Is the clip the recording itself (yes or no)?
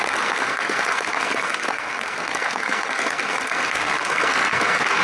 no